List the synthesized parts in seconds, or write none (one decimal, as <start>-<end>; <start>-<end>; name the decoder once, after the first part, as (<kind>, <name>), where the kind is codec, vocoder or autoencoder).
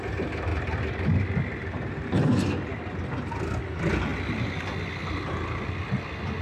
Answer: none